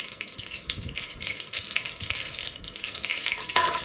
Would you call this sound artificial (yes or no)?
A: yes